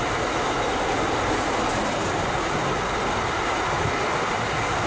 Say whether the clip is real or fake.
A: real